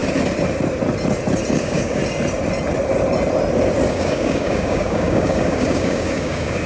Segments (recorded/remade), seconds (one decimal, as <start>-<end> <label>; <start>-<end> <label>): 0.0-1.6 recorded; 1.6-2.0 remade; 2.0-3.9 recorded; 3.9-6.7 remade